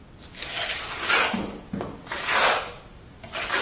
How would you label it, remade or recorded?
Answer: recorded